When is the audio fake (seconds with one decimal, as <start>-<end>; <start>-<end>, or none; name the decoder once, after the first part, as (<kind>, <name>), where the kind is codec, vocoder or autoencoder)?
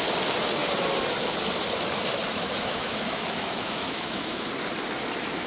2.3-4.5 (autoencoder, DAC-VAE)